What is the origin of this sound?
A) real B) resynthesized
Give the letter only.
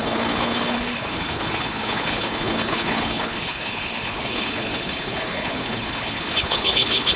B